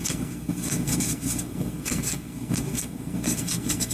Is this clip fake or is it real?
fake